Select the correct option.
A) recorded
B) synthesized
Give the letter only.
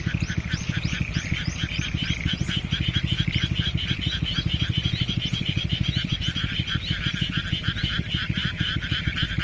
A